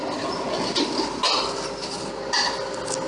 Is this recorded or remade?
recorded